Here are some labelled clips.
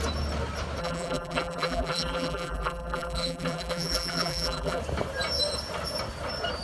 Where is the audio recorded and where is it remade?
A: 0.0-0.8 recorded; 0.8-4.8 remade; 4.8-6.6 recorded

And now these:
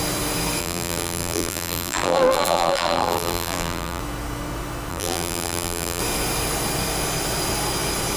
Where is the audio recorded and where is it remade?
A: 0.0-0.6 recorded; 0.6-4.0 remade; 4.0-4.9 recorded; 4.9-6.0 remade; 6.0-8.2 recorded